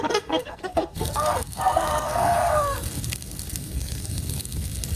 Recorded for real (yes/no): no